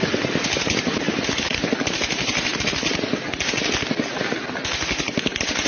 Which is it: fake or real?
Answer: real